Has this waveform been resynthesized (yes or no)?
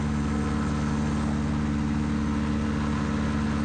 no